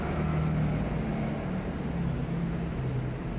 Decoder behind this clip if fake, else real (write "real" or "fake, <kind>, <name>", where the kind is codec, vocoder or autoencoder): real